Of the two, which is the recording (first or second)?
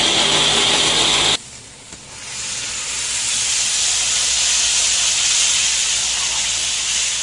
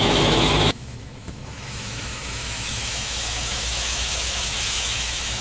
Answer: first